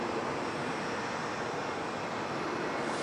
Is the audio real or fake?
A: real